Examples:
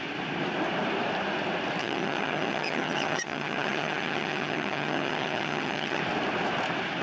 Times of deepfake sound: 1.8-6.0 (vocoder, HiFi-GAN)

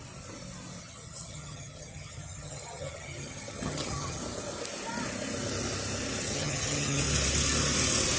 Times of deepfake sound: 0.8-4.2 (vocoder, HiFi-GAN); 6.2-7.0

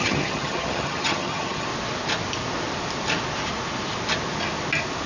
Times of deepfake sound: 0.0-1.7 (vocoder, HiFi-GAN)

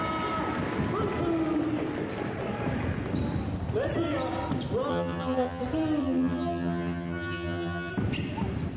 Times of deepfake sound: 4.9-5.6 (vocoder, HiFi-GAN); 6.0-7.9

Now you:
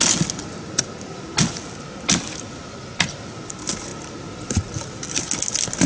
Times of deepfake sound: none

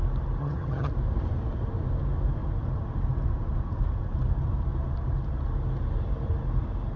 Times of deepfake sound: 0.4-0.9 (vocoder, HiFi-GAN)